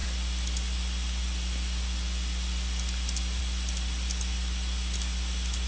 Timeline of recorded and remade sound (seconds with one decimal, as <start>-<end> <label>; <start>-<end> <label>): 0.0-5.7 recorded